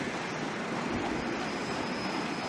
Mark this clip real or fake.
real